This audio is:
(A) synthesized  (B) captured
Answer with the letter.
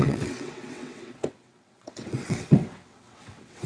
A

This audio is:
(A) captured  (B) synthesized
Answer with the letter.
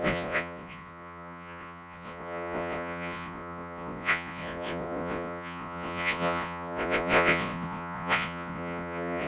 B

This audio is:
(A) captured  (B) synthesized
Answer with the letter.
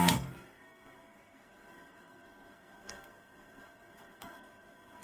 B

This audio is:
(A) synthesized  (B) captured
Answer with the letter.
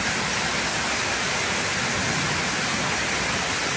B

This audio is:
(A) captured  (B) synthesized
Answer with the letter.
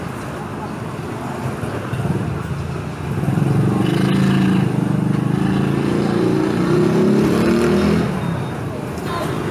A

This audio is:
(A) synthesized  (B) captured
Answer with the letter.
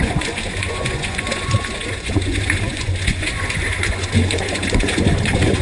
A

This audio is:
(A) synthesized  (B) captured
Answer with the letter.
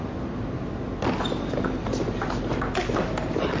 B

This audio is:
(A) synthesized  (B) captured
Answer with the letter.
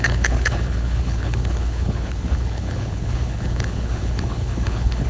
A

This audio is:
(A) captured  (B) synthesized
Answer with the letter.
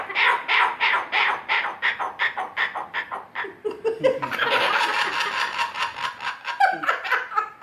B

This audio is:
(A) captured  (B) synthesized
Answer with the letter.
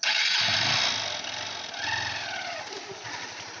A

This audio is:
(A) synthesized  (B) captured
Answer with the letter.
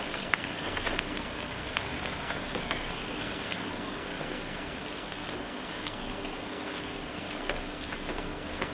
A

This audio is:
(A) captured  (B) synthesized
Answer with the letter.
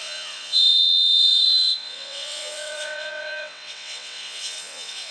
B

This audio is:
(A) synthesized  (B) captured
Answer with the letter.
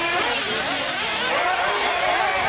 B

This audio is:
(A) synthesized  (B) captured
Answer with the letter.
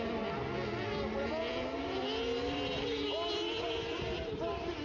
B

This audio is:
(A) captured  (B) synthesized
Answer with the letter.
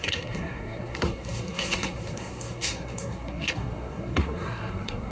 B